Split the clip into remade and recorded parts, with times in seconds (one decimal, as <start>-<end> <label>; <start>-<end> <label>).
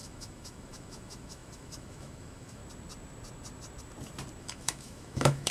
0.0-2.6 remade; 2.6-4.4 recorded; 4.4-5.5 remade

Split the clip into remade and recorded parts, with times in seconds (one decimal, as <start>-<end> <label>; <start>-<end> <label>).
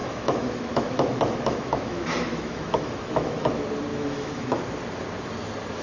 0.0-3.5 remade; 3.5-3.9 recorded; 3.9-4.6 remade; 4.6-5.8 recorded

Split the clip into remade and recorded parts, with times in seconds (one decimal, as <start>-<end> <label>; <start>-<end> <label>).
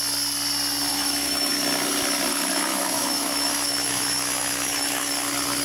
0.0-0.9 recorded; 0.9-1.5 remade; 1.5-2.3 recorded; 2.3-5.1 remade; 5.1-5.6 recorded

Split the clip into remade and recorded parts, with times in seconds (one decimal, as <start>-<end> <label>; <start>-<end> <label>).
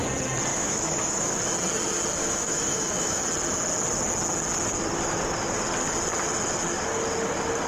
0.0-0.5 recorded; 0.5-1.4 remade; 1.4-2.2 recorded; 2.2-3.2 remade; 3.2-7.7 recorded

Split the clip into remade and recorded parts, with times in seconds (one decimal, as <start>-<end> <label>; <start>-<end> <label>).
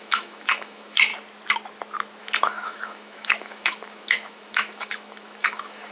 0.0-1.1 remade; 1.1-2.2 recorded; 2.2-5.9 remade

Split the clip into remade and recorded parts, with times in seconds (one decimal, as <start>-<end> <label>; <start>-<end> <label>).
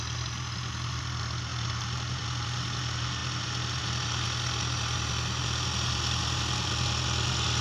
0.0-7.6 recorded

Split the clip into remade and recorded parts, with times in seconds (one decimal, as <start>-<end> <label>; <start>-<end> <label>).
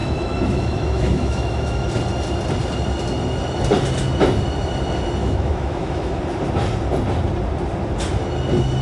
0.0-1.9 remade; 1.9-5.2 recorded; 5.2-6.2 remade; 6.2-8.8 recorded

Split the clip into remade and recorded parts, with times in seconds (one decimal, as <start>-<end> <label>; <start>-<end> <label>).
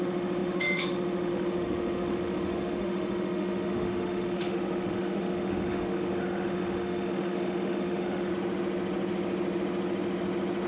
0.0-8.3 remade; 8.3-10.7 recorded